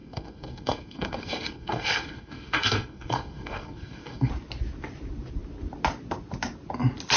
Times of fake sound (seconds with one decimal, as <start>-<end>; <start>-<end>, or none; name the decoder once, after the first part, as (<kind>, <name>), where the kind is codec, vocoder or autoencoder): 0.0-4.3 (codec, SNAC)